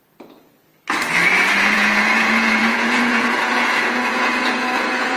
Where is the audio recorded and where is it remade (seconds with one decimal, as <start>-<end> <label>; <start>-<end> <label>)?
0.0-0.7 remade; 0.7-1.6 recorded; 1.6-5.2 remade